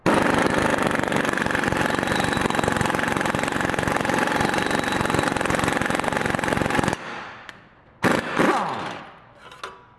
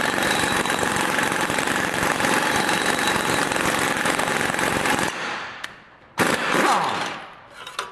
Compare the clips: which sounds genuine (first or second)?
first